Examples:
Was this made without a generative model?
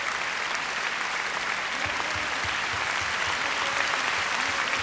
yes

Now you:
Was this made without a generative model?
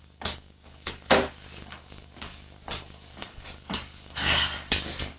no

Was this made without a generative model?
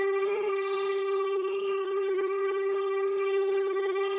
no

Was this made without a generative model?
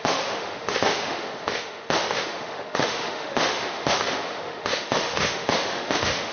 no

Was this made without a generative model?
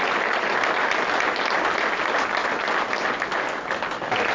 yes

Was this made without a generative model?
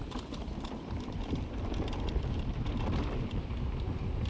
yes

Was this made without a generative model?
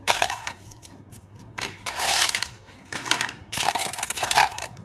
no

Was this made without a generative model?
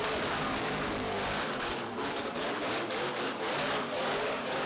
no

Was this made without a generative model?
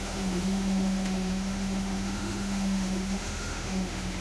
no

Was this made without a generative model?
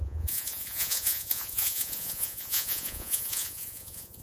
no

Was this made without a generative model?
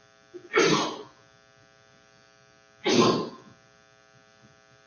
yes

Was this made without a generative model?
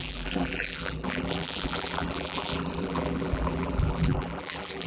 no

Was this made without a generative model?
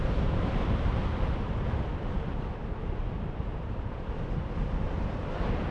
no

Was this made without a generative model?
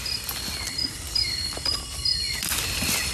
yes